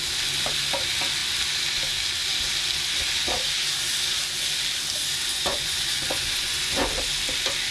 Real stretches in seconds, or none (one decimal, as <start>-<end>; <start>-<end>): 0.0-5.3; 6.9-7.7